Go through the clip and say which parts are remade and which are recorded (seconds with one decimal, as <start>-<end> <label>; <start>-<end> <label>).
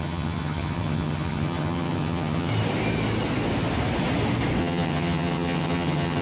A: 0.0-2.5 remade; 2.5-4.6 recorded; 4.6-6.2 remade